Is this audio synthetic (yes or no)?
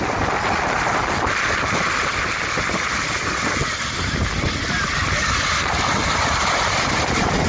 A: no